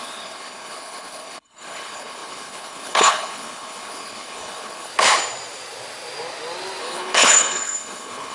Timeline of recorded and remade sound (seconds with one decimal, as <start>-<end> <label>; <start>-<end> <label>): 0.0-4.9 remade; 4.9-6.8 recorded; 6.8-8.3 remade